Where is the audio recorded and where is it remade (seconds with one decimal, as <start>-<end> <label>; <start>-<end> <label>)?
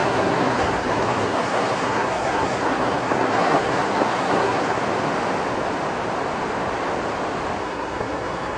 0.0-4.8 remade; 4.8-7.6 recorded; 7.6-8.6 remade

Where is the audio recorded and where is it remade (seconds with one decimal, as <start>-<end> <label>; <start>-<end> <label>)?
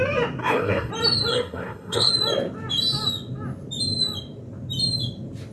0.0-0.4 recorded; 0.4-0.9 remade; 0.9-1.3 recorded; 1.3-2.1 remade; 2.1-5.5 recorded